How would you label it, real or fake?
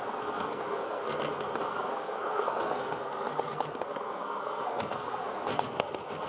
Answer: fake